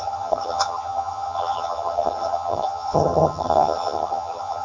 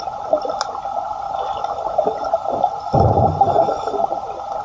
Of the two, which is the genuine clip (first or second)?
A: second